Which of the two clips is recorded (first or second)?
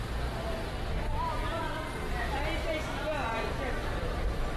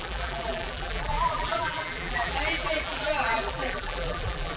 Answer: first